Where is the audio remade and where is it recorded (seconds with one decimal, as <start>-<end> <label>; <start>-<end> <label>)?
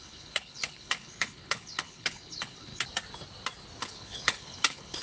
0.0-2.7 remade; 2.7-3.8 recorded; 3.8-5.0 remade